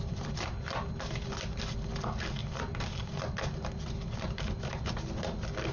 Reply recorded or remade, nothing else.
recorded